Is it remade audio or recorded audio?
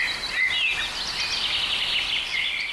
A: recorded